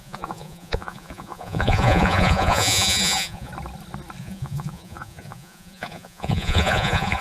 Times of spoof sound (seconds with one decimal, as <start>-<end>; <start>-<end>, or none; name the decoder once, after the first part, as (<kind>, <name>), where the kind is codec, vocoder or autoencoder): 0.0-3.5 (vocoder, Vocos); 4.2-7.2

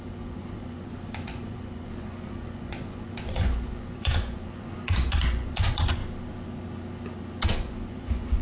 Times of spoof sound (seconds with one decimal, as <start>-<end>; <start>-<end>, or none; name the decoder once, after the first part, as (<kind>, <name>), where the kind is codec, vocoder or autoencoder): 0.0-6.0 (vocoder, Vocos); 7.5-8.4

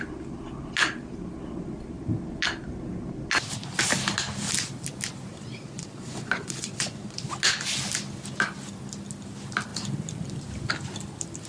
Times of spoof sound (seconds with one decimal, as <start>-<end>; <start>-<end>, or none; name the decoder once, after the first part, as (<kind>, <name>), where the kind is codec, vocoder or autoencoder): 5.3-7.3 (vocoder, Vocos)